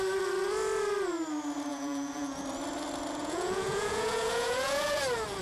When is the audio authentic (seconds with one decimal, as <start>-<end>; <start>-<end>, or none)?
0.0-1.7; 2.4-3.2; 5.0-5.4